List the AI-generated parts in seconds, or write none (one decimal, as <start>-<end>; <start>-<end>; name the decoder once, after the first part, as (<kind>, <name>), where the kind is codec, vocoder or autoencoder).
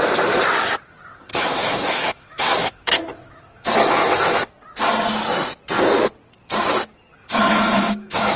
1.3-4.5 (autoencoder, DAC-VAE); 7.2-8.4